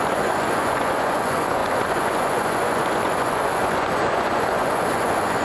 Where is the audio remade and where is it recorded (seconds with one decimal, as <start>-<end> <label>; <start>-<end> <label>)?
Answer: 0.0-5.4 remade